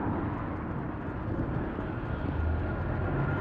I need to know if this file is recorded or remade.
recorded